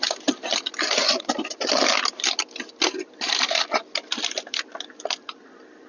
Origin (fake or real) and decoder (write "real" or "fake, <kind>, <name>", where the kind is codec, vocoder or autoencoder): real